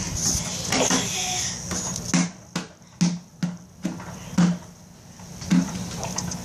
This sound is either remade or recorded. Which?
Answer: recorded